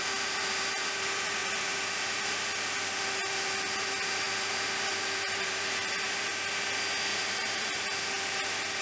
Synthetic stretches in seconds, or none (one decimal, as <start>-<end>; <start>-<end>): 7.1-7.8